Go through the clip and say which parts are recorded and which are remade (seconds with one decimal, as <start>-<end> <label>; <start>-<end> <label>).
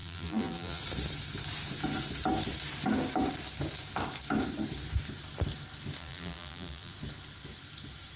0.0-0.8 remade; 0.8-6.0 recorded; 6.0-6.9 remade; 6.9-8.2 recorded